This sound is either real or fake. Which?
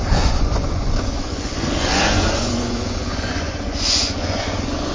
fake